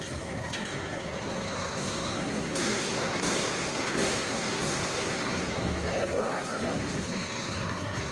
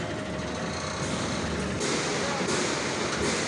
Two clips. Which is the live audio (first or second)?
second